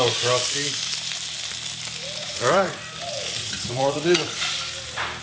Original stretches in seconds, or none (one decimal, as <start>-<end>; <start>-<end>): 0.0-2.2; 2.8-3.4; 4.5-5.2